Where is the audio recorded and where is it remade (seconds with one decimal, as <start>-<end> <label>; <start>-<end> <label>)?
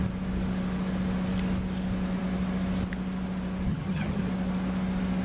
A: 0.0-3.7 recorded; 3.7-4.2 remade; 4.2-5.2 recorded